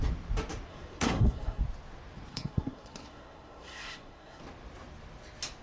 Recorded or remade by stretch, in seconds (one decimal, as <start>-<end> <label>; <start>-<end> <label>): 0.0-0.7 recorded; 0.7-1.6 remade; 1.6-2.3 recorded; 2.3-4.4 remade; 4.4-5.6 recorded